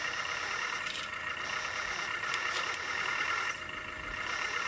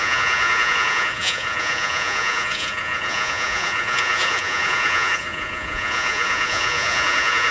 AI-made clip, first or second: second